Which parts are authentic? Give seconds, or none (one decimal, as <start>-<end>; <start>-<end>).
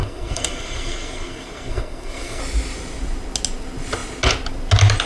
2.4-5.1